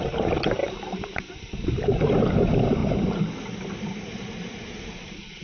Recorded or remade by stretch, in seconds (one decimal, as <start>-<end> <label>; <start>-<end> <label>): 0.0-2.8 remade; 2.8-3.4 recorded; 3.4-5.4 remade